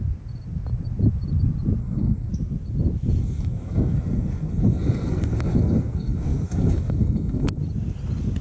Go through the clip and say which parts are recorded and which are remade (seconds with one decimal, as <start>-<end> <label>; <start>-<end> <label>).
0.0-1.8 recorded; 1.8-2.3 remade; 2.3-3.2 recorded; 3.2-7.6 remade; 7.6-8.4 recorded